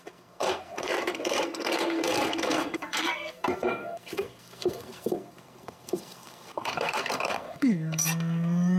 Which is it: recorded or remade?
remade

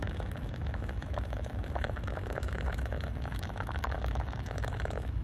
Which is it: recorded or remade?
remade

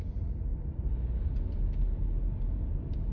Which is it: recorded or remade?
recorded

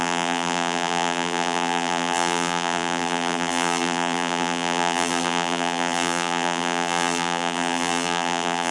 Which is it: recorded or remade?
remade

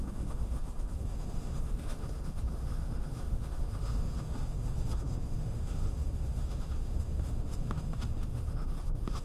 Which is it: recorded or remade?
remade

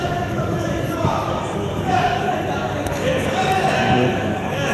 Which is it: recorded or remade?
remade